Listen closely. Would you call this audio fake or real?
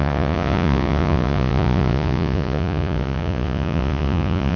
fake